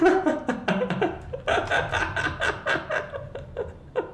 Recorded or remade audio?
recorded